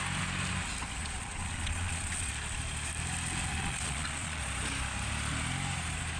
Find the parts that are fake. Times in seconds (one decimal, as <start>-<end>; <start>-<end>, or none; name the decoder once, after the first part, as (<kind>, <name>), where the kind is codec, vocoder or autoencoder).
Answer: 1.0-2.3 (vocoder, Vocos); 3.5-4.4